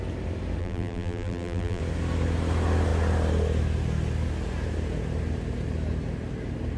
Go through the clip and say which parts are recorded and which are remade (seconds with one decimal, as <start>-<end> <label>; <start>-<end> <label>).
0.0-0.6 recorded; 0.6-1.8 remade; 1.8-6.8 recorded